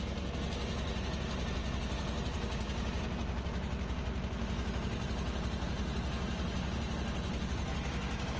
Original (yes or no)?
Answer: yes